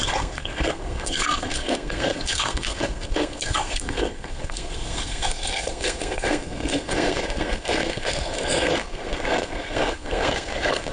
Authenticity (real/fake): fake